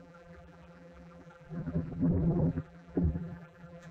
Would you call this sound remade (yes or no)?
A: yes